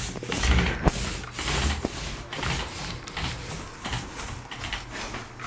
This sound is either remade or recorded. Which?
recorded